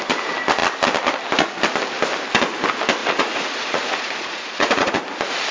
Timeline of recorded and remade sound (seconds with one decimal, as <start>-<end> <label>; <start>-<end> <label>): 0.0-3.0 recorded; 3.0-5.0 remade; 5.0-5.5 recorded